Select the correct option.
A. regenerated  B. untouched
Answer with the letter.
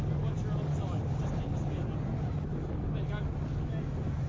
B